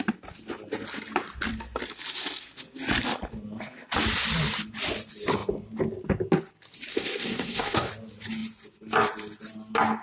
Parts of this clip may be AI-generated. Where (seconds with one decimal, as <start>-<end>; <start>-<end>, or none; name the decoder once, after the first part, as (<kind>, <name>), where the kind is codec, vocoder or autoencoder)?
6.9-7.9 (codec, SNAC)